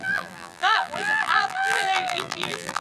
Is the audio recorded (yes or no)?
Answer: no